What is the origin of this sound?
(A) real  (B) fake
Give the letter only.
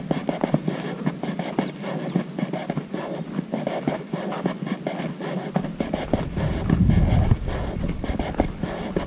A